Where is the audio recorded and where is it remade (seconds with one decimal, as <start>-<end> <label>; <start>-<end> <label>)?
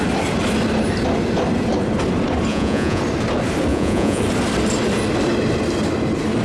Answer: 0.0-2.5 recorded; 2.5-3.0 remade; 3.0-3.7 recorded; 3.7-4.2 remade; 4.2-6.4 recorded